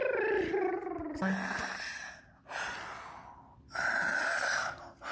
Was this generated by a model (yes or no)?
no